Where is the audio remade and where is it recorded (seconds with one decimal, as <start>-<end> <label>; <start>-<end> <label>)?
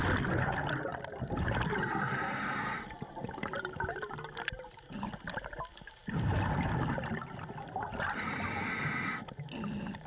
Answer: 0.0-10.1 recorded